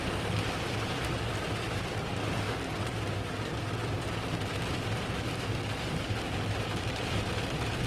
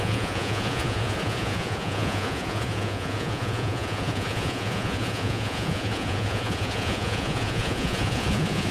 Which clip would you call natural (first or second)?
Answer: first